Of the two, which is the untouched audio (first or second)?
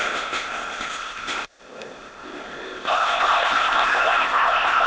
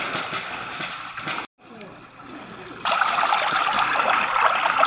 second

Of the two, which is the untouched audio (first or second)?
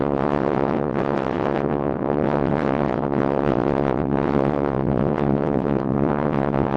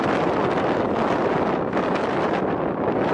second